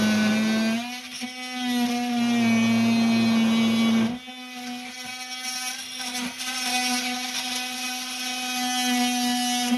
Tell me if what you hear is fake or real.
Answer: real